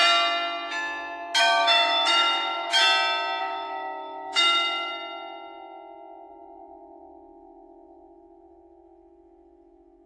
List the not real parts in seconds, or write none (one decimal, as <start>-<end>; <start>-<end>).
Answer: 1.4-2.8; 3.4-4.9; 6.3-10.1